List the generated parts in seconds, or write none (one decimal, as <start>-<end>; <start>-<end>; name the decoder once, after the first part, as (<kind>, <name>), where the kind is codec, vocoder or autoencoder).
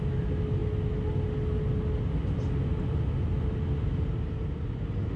none